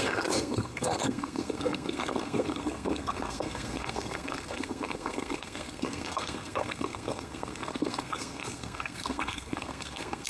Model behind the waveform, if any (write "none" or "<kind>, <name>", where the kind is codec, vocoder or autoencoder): codec, SNAC